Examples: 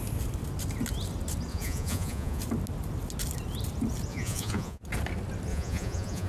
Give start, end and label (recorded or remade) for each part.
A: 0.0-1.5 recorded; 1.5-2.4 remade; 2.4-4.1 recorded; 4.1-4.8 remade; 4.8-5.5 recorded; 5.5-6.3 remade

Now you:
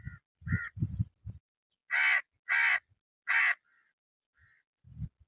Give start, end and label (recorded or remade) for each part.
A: 0.0-5.3 recorded

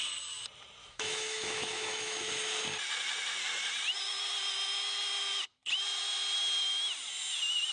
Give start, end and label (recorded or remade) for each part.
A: 0.0-0.8 recorded; 0.8-2.2 remade; 2.2-7.7 recorded

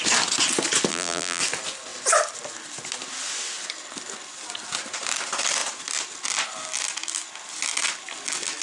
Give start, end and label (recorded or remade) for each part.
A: 0.0-0.9 recorded; 0.9-1.4 remade; 1.4-8.6 recorded

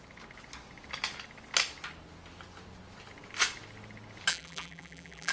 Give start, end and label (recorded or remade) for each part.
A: 0.0-4.3 recorded; 4.3-5.3 remade

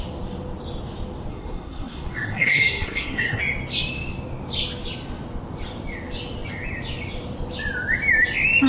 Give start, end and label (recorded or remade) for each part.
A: 0.0-1.3 recorded; 1.3-3.4 remade; 3.4-8.7 recorded